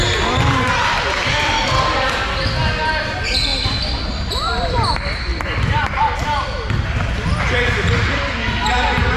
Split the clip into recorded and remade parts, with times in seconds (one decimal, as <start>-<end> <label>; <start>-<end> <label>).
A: 0.0-0.9 recorded; 0.9-1.6 remade; 1.6-3.5 recorded; 3.5-4.0 remade; 4.0-5.3 recorded; 5.3-6.0 remade; 6.0-9.2 recorded